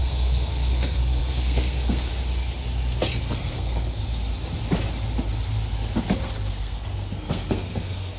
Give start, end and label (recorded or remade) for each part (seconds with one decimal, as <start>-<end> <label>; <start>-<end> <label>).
0.0-2.1 remade; 2.1-3.2 recorded; 3.2-4.0 remade; 4.0-6.5 recorded; 6.5-8.2 remade